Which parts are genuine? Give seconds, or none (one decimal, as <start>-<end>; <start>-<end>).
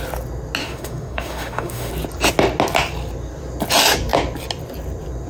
0.0-0.6; 1.9-5.3